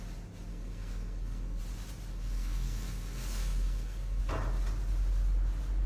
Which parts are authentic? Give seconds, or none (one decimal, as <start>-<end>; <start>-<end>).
0.0-0.5; 1.6-2.1; 4.2-5.9